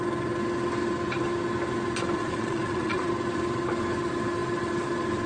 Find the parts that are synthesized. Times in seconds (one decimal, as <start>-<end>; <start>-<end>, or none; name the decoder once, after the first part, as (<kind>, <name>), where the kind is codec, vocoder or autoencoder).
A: 2.2-3.1 (vocoder, Vocos)